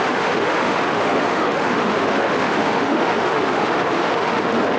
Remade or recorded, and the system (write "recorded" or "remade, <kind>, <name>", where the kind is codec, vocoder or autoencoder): remade, autoencoder, DAC-VAE